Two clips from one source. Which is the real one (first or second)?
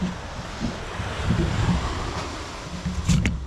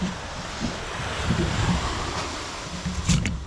first